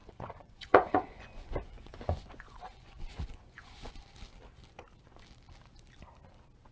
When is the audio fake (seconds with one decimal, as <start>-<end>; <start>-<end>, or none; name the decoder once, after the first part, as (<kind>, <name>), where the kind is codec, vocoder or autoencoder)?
0.0-3.9 (vocoder, Vocos)